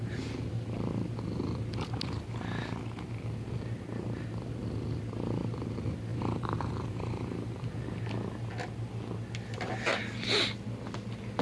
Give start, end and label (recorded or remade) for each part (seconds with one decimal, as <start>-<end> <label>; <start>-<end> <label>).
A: 0.0-6.1 recorded; 6.1-8.0 remade; 8.0-11.4 recorded